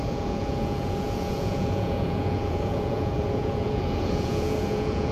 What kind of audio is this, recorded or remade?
remade